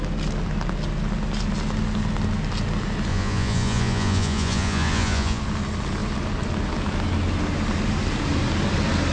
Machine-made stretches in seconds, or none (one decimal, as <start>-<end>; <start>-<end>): 3.1-5.4